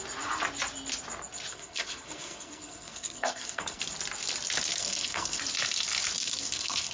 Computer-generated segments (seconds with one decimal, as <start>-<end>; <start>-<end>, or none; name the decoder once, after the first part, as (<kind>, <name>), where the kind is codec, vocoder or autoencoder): 1.5-3.8 (codec, SNAC); 4.7-5.4; 6.2-6.9